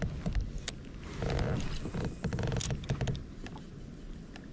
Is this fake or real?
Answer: real